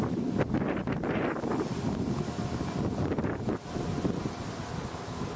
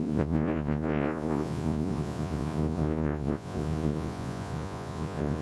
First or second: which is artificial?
second